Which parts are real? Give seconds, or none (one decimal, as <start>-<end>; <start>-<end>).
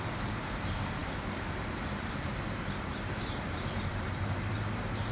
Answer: none